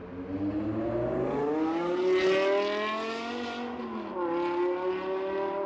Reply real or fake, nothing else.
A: real